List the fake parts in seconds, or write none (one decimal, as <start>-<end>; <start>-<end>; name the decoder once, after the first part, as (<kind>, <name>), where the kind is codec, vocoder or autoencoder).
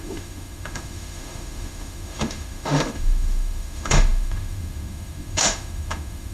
0.0-6.3 (autoencoder, DAC-VAE)